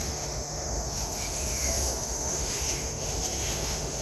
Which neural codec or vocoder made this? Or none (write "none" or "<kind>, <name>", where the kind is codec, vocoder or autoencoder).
autoencoder, DAC-VAE